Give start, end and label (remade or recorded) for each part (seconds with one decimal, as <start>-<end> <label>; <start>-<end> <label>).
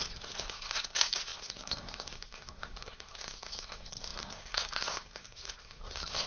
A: 0.0-6.3 remade